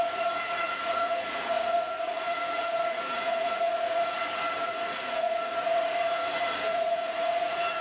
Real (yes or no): no